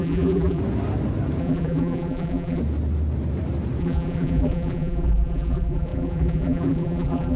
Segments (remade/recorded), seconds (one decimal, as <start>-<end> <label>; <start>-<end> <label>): 0.0-0.6 remade; 0.6-1.4 recorded; 1.4-2.6 remade; 2.6-3.8 recorded; 3.8-7.4 remade